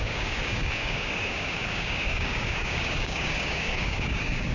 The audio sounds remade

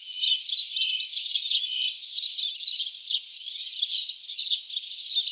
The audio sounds recorded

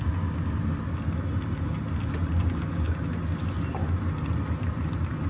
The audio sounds recorded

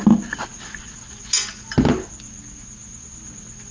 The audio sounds recorded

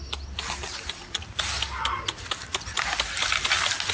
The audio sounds recorded